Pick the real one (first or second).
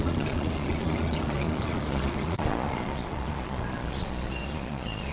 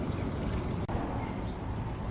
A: second